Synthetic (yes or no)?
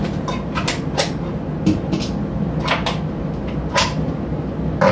no